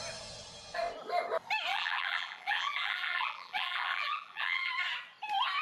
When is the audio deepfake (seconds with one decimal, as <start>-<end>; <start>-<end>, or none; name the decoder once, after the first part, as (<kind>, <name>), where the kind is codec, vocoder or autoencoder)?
1.7-4.7 (vocoder, BigVGAN v2)